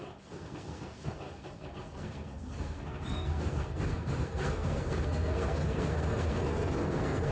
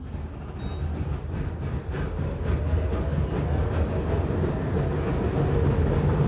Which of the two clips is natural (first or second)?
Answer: second